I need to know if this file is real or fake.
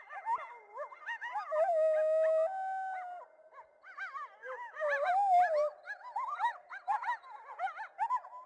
real